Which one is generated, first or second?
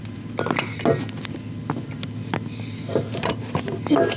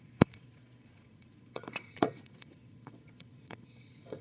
second